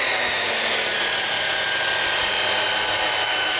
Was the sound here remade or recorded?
recorded